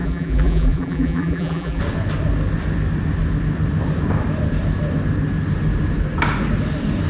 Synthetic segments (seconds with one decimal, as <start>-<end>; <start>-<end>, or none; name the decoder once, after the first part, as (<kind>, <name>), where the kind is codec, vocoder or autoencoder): 0.0-1.8 (vocoder, BigVGAN v2)